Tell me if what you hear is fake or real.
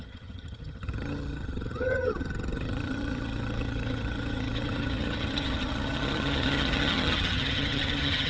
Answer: fake